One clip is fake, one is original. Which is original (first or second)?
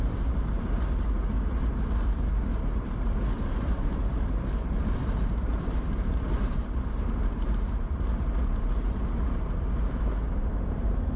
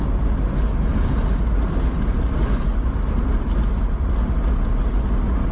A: second